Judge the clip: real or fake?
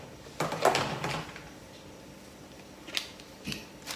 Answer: real